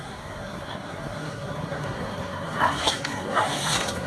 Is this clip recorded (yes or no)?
no